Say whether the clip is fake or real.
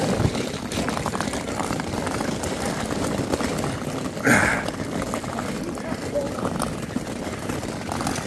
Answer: real